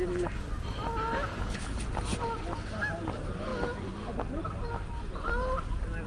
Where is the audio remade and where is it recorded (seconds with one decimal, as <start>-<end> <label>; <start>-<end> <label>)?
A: 0.0-1.3 recorded; 1.3-1.8 remade; 1.8-6.1 recorded